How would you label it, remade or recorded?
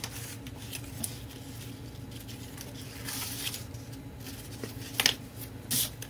recorded